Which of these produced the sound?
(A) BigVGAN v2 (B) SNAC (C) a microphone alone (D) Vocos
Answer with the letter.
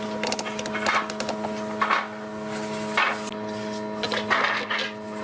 C